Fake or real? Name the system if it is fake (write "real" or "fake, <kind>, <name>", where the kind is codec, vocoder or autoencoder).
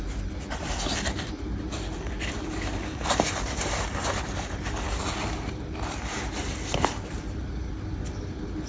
real